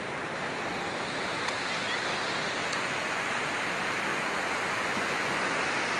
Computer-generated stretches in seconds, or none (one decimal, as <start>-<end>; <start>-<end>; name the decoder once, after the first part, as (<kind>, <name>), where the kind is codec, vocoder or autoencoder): 2.6-3.3 (vocoder, Vocos); 4.1-5.6